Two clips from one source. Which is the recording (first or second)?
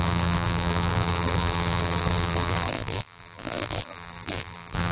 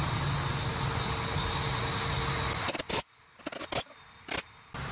second